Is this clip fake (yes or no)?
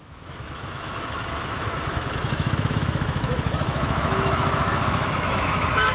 yes